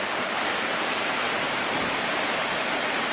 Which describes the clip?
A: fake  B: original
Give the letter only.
A